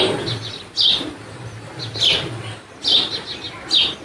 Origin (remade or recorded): recorded